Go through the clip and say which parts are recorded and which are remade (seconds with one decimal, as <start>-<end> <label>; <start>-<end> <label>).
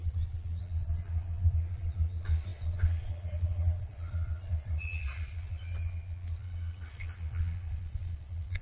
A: 0.0-8.6 remade